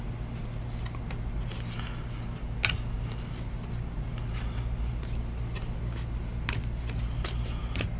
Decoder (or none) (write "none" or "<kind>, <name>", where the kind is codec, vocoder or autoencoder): none